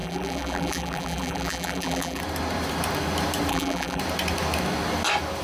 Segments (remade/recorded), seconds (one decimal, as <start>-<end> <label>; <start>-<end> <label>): 0.0-2.2 remade; 2.2-3.5 recorded; 3.5-4.0 remade; 4.0-5.4 recorded

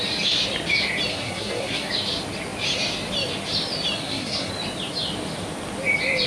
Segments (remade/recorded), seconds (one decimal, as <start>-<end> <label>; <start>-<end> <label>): 0.0-1.1 recorded; 1.1-1.9 remade; 1.9-4.0 recorded; 4.0-4.5 remade; 4.5-6.3 recorded

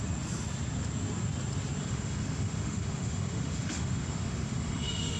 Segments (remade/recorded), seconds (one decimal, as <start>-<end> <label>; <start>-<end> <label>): 0.0-1.8 recorded; 1.8-5.2 remade

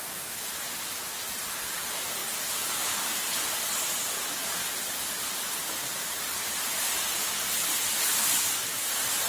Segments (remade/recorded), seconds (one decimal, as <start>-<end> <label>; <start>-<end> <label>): 0.0-9.3 recorded

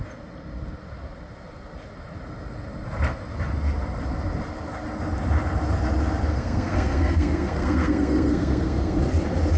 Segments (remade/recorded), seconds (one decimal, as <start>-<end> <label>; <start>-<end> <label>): 0.0-6.3 recorded; 6.3-9.0 remade; 9.0-9.6 recorded